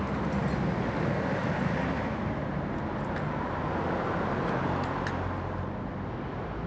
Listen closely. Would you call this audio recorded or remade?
recorded